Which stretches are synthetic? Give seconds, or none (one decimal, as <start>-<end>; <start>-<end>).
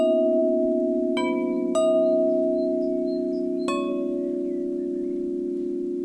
none